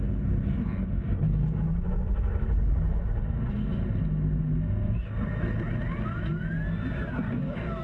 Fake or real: real